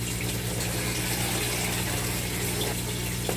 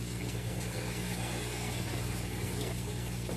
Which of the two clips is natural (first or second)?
first